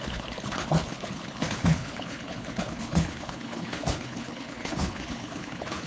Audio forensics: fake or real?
fake